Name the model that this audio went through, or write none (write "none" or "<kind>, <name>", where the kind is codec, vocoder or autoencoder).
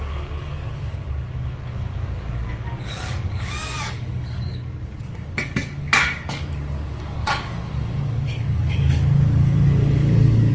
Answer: codec, DAC